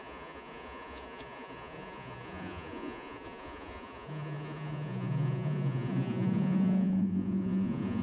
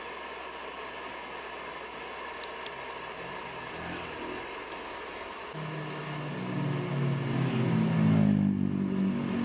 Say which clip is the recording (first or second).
second